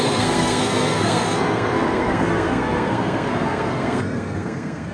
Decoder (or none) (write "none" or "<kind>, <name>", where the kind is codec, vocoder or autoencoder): codec, SNAC